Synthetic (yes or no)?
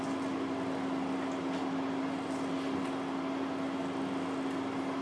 no